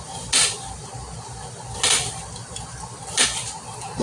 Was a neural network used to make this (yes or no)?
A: no